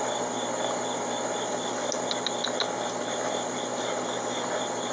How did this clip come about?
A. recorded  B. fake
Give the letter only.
A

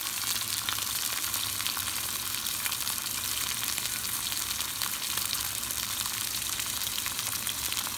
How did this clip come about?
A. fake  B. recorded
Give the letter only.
A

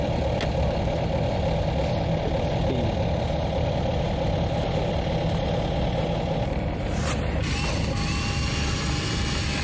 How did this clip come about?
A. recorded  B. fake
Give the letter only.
A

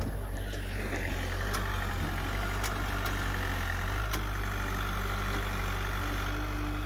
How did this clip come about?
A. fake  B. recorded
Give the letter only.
B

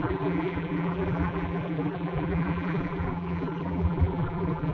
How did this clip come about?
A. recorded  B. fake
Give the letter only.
B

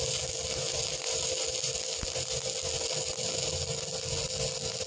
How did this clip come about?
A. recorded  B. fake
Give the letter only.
A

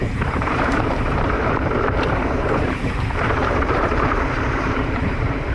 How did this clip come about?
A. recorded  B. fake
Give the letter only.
B